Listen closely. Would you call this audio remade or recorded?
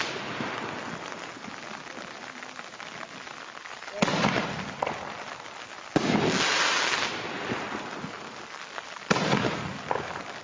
recorded